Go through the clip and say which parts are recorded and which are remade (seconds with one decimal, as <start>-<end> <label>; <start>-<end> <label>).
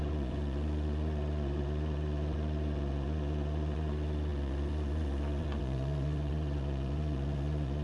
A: 0.0-7.8 remade